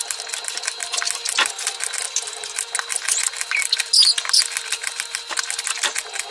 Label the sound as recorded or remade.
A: recorded